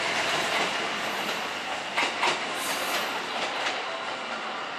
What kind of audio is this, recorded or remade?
recorded